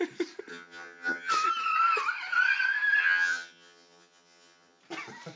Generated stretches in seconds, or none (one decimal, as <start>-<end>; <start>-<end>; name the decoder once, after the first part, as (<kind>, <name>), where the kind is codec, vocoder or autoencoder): 0.5-1.3 (vocoder, HiFi-GAN); 3.0-4.8